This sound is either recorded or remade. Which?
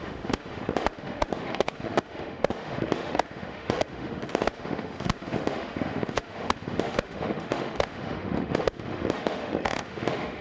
remade